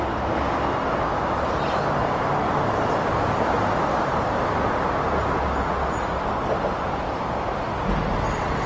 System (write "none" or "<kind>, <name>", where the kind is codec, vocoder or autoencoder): none